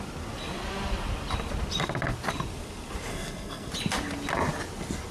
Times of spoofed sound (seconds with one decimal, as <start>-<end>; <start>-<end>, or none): 3.1-3.7